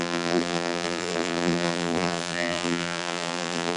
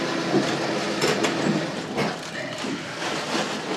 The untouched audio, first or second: second